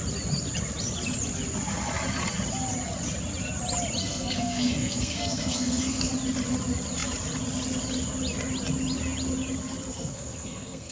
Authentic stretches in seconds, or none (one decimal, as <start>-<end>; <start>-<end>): 0.0-4.0; 6.1-9.9